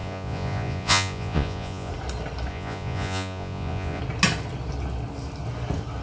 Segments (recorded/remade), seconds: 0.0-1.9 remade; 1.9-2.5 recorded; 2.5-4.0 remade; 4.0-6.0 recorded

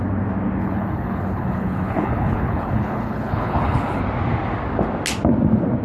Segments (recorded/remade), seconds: 0.0-0.6 recorded; 0.6-4.0 remade; 4.0-5.8 recorded

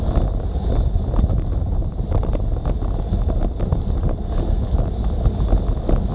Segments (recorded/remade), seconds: 0.0-1.6 recorded; 1.6-2.4 remade; 2.4-6.1 recorded

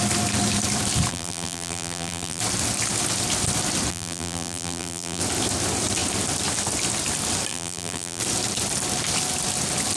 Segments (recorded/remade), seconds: 0.0-1.1 recorded; 1.1-2.4 remade; 2.4-3.9 recorded; 3.9-5.2 remade; 5.2-7.5 recorded; 7.5-8.2 remade; 8.2-10.0 recorded

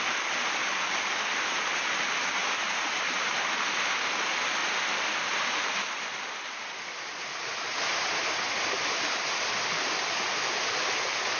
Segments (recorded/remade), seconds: 0.0-11.4 recorded

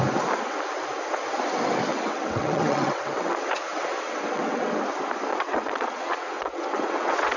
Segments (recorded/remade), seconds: 0.0-1.9 recorded; 1.9-4.7 remade; 4.7-5.3 recorded; 5.3-7.4 remade